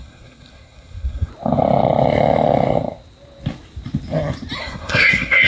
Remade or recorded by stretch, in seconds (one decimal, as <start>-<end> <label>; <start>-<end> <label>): 0.0-1.3 remade; 1.3-4.6 recorded; 4.6-5.5 remade